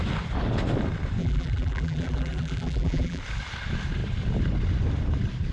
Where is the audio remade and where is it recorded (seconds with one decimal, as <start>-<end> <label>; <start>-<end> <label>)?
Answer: 0.0-1.2 recorded; 1.2-3.2 remade; 3.2-5.5 recorded